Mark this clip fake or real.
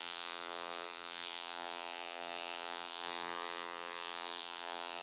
fake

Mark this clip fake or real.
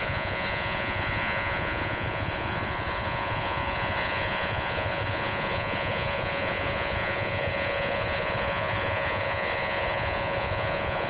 fake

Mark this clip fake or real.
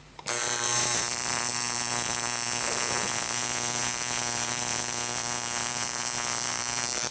fake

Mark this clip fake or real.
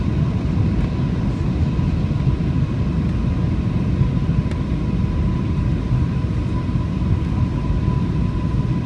real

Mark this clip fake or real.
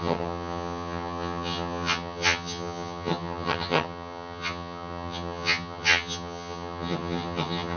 fake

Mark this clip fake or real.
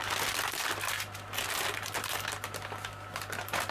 real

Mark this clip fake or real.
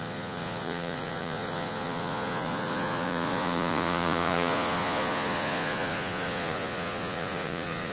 fake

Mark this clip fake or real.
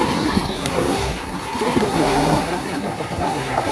fake